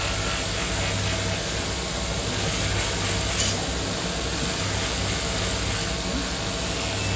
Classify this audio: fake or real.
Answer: real